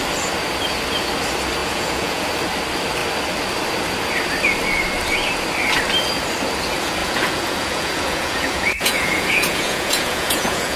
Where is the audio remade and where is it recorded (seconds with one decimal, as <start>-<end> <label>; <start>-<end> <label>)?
0.0-1.6 recorded; 1.6-2.2 remade; 2.2-7.0 recorded; 7.0-10.8 remade